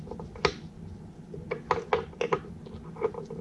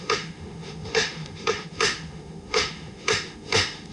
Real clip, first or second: first